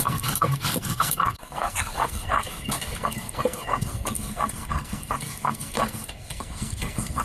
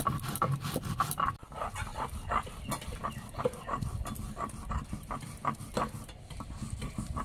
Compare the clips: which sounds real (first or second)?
second